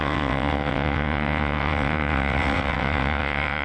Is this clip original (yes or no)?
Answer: no